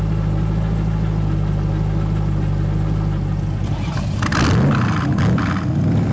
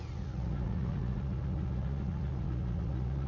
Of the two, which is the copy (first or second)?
second